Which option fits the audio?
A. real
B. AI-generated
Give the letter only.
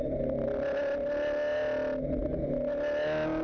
A